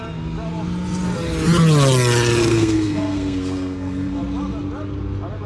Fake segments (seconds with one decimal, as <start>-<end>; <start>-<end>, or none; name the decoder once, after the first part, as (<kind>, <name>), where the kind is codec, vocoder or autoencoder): 2.5-4.2 (codec, SNAC)